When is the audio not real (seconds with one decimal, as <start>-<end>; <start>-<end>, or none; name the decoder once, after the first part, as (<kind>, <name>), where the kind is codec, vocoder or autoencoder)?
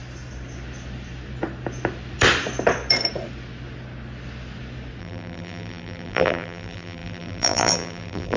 5.0-8.4 (vocoder, BigVGAN v2)